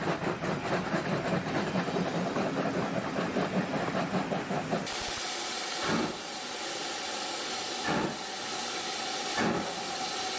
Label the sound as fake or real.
real